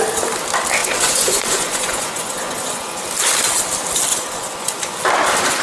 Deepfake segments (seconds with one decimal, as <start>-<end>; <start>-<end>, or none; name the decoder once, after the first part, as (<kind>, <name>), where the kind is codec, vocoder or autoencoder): 0.8-3.0 (vocoder, Vocos); 4.1-5.0